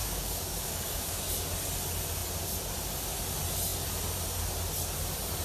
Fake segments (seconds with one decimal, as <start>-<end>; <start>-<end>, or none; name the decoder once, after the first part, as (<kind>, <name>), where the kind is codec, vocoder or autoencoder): 0.0-1.2 (codec, DAC)